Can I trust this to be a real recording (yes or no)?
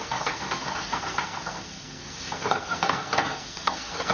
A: no